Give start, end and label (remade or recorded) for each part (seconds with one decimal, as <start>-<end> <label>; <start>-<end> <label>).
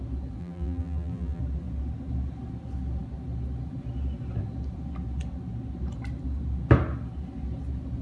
0.0-0.4 recorded; 0.4-1.4 remade; 1.4-8.0 recorded